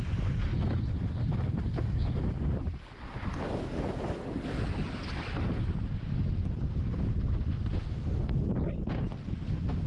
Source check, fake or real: real